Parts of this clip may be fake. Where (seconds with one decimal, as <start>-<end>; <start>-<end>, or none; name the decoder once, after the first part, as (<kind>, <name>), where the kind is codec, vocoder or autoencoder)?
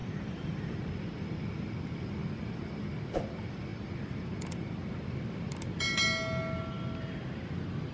0.0-0.8 (vocoder, BigVGAN v2); 2.2-2.8; 3.7-4.9